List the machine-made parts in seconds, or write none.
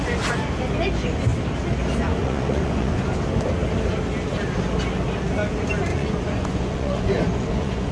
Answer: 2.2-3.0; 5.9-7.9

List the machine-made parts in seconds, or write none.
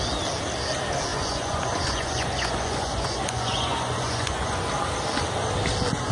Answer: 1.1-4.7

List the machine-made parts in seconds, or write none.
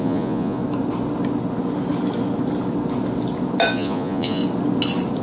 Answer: 0.0-0.6; 3.7-4.4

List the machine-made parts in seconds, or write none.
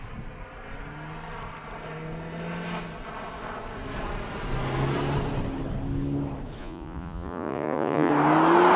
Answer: 6.6-8.1